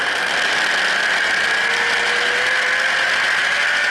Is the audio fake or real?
real